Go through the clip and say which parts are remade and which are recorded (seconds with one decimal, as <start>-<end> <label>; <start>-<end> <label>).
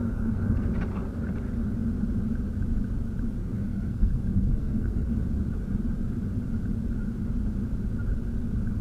0.0-0.7 remade; 0.7-3.4 recorded; 3.4-5.1 remade; 5.1-8.8 recorded